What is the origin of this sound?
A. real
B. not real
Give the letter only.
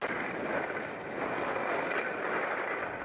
A